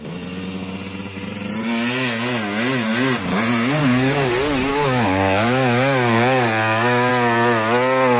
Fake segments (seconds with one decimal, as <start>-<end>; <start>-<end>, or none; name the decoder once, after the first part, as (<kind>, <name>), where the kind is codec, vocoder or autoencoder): 3.8-4.3 (codec, DAC); 4.7-7.1